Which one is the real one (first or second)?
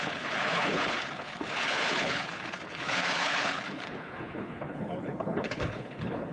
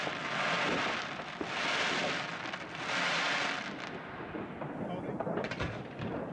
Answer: second